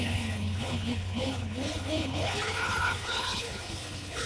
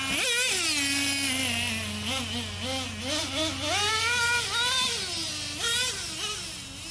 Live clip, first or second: second